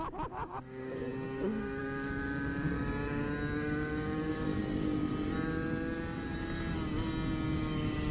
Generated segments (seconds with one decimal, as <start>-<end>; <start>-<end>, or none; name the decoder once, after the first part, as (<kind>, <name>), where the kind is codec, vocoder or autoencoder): 0.0-4.6 (codec, DAC); 7.6-8.1